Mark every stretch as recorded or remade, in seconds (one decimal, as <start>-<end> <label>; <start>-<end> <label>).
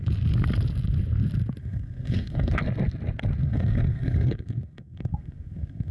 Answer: 0.0-1.6 recorded; 1.6-2.5 remade; 2.5-3.4 recorded; 3.4-5.9 remade